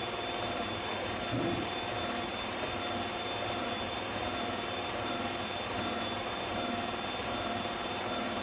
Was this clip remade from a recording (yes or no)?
yes